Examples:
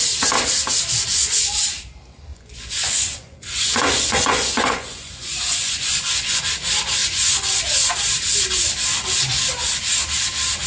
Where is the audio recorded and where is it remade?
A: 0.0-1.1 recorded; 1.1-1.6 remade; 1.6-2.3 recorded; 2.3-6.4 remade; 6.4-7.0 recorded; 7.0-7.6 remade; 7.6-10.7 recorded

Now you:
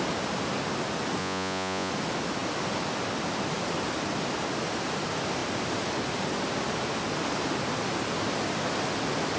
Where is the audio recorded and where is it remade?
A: 0.0-1.2 recorded; 1.2-1.9 remade; 1.9-9.4 recorded